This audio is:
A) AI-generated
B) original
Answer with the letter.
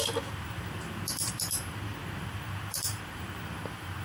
A